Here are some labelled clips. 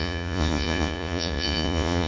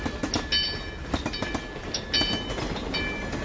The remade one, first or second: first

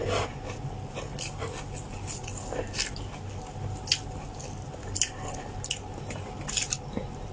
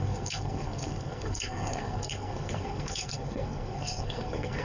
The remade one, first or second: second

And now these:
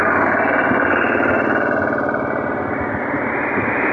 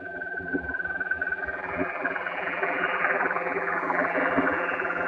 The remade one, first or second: second